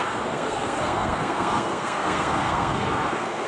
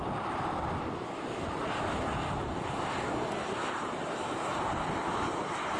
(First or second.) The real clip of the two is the second